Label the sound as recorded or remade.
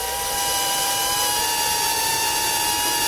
recorded